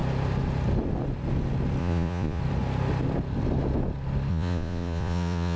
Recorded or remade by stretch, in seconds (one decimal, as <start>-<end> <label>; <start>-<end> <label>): 0.0-1.8 recorded; 1.8-2.4 remade; 2.4-4.3 recorded; 4.3-5.6 remade